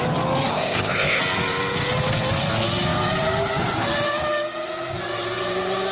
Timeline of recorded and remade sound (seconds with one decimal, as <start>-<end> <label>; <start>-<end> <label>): 0.0-0.5 recorded; 0.5-1.2 remade; 1.2-5.9 recorded